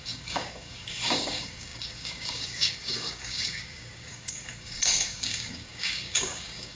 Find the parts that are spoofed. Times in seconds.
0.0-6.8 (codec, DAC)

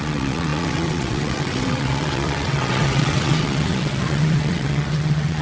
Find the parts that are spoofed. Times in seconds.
0.0-5.4 (vocoder, WaveNeXt)

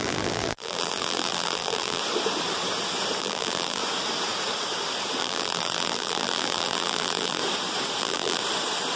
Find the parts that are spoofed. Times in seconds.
0.0-2.0 (vocoder, BigVGAN v2); 3.2-3.8; 5.2-7.4; 8.0-8.4